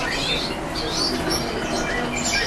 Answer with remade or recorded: recorded